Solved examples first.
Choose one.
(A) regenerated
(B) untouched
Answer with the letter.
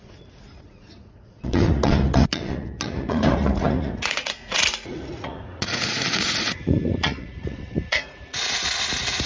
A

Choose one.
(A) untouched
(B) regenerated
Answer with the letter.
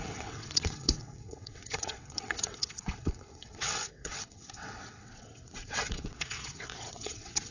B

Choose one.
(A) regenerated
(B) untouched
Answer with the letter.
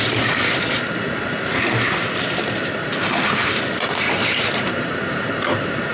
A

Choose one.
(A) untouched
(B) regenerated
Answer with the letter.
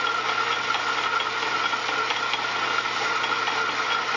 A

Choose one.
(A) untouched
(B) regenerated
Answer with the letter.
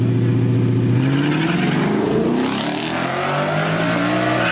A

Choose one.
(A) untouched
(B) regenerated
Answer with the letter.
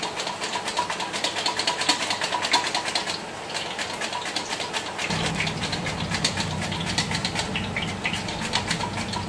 A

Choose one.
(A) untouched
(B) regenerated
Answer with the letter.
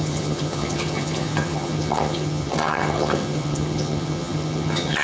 B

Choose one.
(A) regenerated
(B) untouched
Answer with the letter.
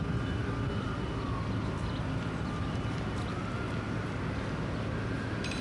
B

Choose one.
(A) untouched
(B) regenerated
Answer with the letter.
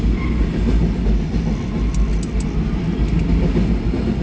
A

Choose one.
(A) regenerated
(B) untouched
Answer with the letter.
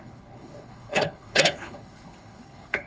A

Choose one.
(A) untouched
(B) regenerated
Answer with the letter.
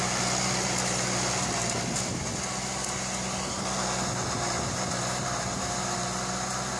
A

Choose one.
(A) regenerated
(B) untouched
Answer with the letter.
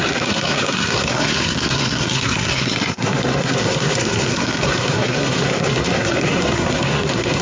A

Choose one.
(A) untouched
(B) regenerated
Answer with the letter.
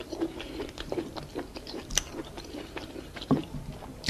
B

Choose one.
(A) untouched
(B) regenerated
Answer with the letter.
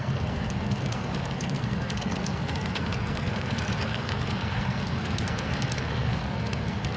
B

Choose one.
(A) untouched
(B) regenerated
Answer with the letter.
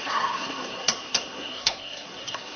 B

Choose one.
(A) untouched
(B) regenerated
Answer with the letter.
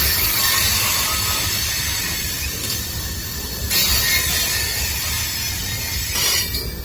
A